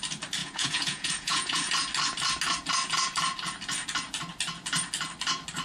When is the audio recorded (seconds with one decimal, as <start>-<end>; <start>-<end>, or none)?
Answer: 0.0-0.4; 1.7-5.6